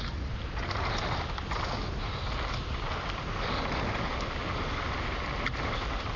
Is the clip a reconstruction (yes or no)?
no